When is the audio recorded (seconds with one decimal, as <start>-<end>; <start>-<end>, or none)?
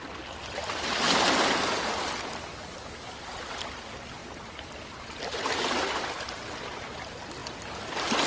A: 0.0-8.3